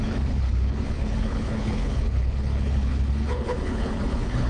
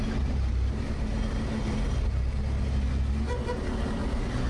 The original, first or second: second